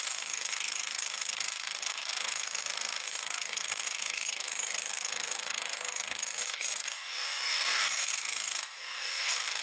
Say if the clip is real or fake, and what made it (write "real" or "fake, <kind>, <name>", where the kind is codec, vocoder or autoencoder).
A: fake, codec, DAC